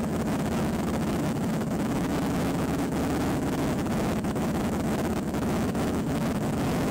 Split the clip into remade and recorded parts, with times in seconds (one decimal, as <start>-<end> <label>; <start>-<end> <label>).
0.0-6.9 remade